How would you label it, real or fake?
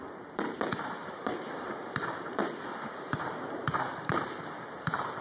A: fake